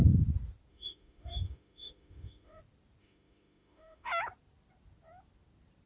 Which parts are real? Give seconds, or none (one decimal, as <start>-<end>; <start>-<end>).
0.0-0.7; 2.6-3.0; 4.2-5.9